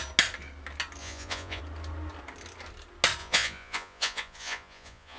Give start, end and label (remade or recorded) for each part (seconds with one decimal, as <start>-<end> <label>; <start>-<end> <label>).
0.0-1.0 recorded; 1.0-1.6 remade; 1.6-3.2 recorded; 3.2-5.2 remade